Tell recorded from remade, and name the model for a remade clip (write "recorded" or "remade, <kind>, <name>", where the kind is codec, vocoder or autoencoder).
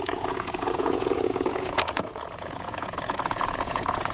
remade, vocoder, Vocos